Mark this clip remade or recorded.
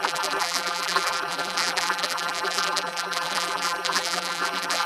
remade